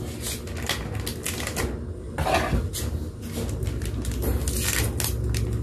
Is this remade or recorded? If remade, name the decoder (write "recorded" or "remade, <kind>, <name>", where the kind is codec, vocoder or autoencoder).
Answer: recorded